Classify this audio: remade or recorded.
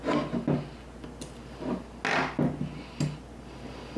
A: recorded